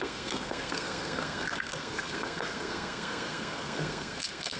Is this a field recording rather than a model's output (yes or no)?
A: no